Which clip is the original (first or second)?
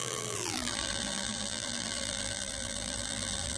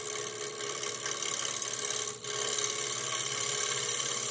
second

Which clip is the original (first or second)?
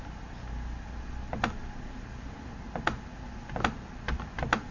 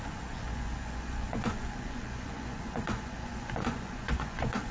first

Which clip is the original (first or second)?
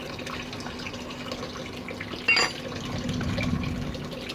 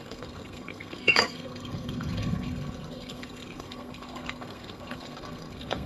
first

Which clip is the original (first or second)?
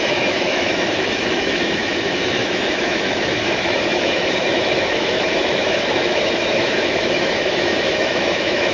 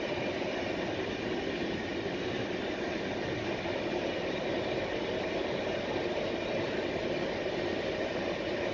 second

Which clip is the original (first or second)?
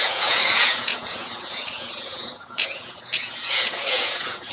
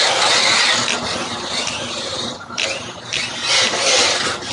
second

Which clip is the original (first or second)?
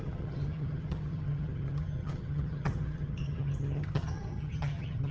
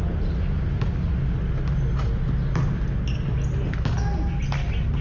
second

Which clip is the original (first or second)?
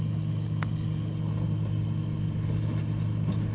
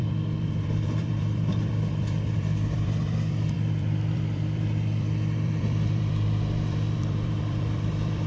first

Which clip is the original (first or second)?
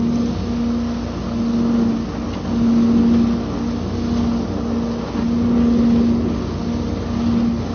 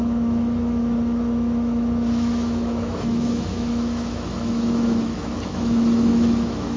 first